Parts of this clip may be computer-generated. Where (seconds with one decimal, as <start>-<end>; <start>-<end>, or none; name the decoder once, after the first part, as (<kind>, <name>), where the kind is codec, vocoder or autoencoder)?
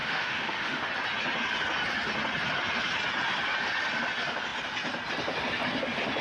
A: 0.0-0.9 (autoencoder, DAC-VAE)